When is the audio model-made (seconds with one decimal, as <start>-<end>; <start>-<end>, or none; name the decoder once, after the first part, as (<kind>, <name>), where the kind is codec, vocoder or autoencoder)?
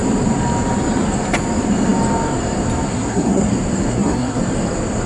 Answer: 2.9-3.5 (codec, SNAC); 3.9-4.4